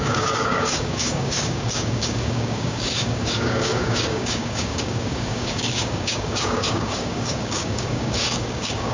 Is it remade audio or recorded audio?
remade